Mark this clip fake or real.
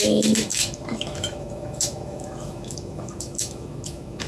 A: fake